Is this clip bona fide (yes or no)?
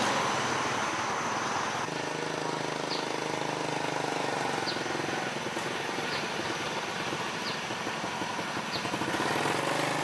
yes